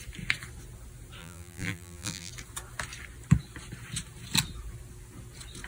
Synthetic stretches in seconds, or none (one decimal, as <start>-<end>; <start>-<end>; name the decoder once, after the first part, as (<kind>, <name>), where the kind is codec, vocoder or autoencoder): 1.2-2.3 (vocoder, BigVGAN v2)